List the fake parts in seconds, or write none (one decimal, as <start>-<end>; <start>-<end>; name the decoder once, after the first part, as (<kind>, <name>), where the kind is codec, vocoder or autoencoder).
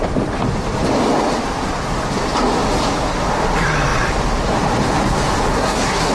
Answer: 5.5-6.1 (codec, SNAC)